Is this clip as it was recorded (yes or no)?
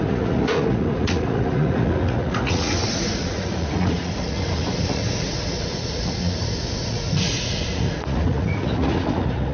no